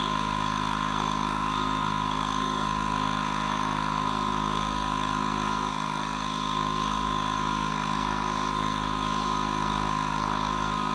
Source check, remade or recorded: remade